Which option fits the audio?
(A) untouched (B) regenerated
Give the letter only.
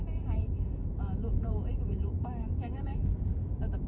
B